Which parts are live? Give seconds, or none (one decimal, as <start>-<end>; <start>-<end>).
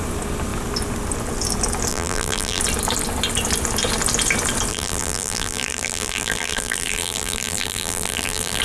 0.0-1.9; 2.6-4.7